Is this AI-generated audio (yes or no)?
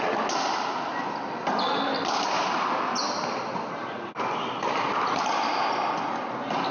no